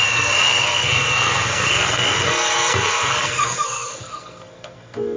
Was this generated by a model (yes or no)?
yes